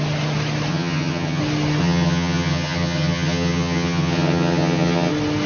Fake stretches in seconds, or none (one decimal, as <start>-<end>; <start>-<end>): 0.7-1.4; 1.8-5.1